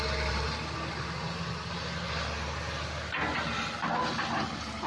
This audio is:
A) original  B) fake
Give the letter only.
A